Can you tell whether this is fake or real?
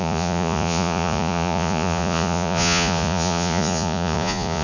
fake